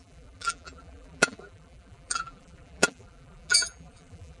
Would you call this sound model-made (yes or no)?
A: yes